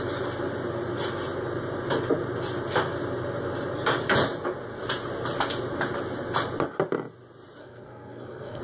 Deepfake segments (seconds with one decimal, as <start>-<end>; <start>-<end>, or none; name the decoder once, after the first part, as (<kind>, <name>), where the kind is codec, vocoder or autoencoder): 7.6-8.6 (codec, SNAC)